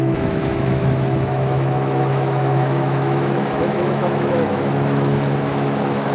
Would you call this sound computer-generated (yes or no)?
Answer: yes